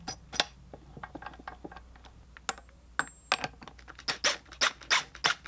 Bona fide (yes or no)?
yes